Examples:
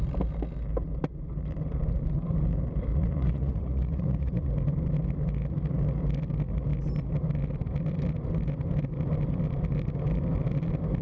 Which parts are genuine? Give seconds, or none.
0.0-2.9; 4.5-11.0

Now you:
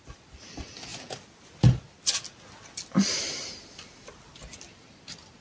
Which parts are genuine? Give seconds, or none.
0.9-4.1

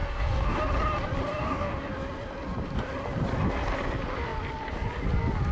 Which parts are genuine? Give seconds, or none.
0.6-1.4; 1.9-5.5